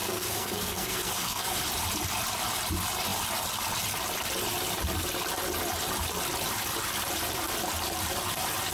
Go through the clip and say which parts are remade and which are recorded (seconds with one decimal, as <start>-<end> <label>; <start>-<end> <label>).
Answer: 0.0-1.6 remade; 1.6-8.7 recorded